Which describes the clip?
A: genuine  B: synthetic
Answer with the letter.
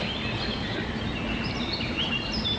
A